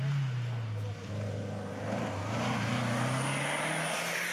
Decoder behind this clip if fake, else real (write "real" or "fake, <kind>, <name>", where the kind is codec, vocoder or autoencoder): real